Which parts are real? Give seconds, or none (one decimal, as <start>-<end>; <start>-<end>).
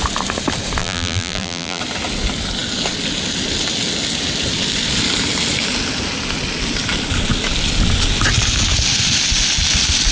0.0-0.8; 1.8-10.1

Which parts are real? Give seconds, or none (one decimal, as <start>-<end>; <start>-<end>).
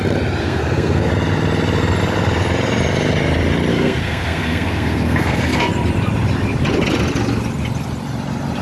0.0-0.4; 1.1-3.7; 5.7-8.6